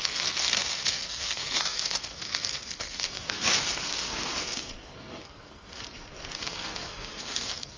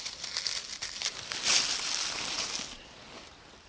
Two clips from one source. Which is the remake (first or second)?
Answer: first